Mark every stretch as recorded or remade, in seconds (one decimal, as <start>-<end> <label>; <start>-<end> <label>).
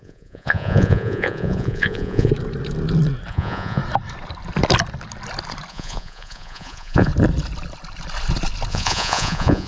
0.0-2.3 remade; 2.3-3.3 recorded; 3.3-3.8 remade; 3.8-5.7 recorded; 5.7-7.1 remade; 7.1-8.7 recorded; 8.7-9.7 remade